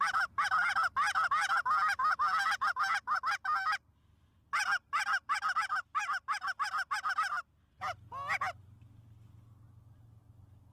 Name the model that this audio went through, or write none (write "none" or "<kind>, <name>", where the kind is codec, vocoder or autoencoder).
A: none